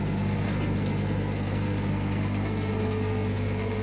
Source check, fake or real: fake